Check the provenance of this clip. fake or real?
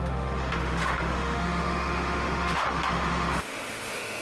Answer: fake